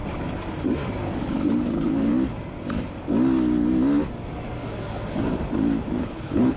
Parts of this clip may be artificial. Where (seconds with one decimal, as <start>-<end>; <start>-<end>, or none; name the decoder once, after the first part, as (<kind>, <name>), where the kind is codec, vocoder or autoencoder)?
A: 1.3-2.1 (codec, HILCodec); 6.0-6.6